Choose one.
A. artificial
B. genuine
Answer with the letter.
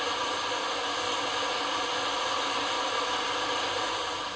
B